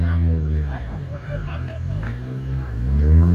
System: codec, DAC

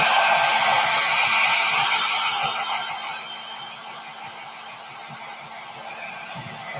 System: none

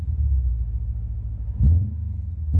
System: none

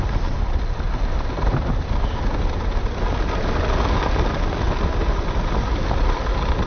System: none